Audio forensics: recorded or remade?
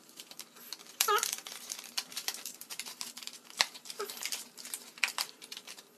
remade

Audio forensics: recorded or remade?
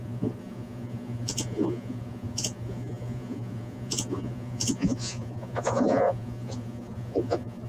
remade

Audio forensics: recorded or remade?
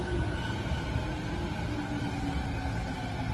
recorded